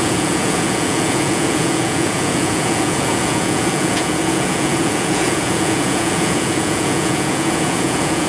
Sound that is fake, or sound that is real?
fake